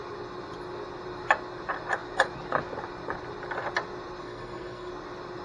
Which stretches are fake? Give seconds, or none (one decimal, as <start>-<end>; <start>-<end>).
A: 4.2-4.9